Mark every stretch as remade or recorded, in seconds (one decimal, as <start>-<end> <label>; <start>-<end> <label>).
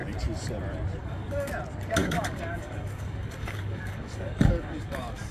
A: 0.0-1.0 recorded; 1.0-1.5 remade; 1.5-2.0 recorded; 2.0-5.3 remade